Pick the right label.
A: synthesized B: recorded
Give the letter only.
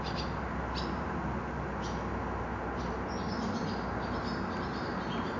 B